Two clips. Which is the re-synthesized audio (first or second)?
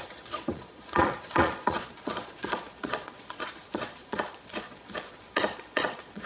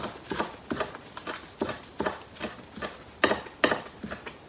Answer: first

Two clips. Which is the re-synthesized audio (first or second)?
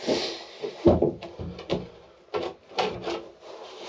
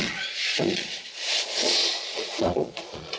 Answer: second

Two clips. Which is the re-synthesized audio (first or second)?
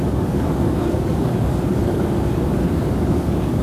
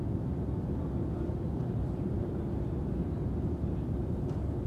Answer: first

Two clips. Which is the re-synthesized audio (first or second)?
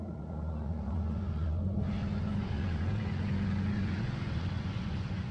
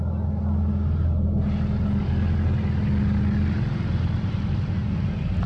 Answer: first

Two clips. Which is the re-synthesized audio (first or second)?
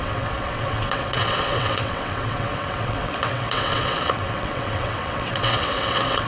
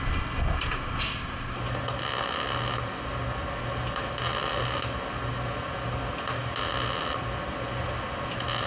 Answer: first